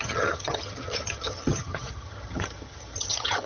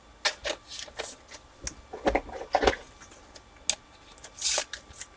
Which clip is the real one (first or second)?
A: second